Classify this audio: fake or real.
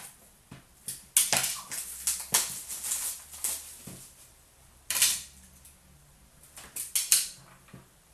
real